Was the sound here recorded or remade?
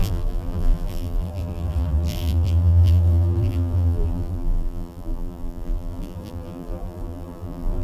remade